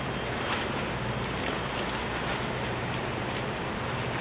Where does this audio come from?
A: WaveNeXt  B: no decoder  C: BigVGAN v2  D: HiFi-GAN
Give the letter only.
B